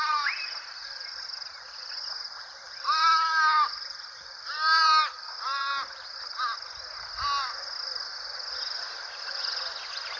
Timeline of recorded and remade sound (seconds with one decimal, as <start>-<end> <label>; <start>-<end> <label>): 0.0-2.4 recorded; 2.4-5.1 remade; 5.1-10.2 recorded